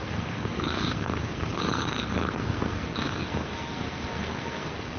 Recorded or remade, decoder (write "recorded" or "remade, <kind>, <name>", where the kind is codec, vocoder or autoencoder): remade, codec, SNAC